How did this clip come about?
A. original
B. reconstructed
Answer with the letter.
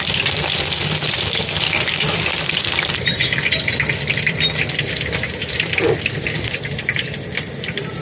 B